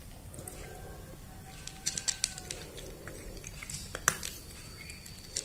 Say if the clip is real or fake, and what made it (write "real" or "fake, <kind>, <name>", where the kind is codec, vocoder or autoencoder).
real